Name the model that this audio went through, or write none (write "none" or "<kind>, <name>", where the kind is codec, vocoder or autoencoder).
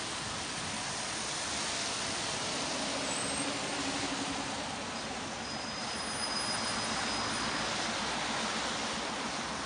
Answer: none